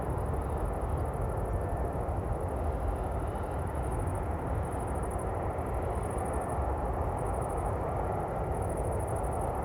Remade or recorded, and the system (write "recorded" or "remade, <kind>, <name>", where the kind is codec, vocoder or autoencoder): recorded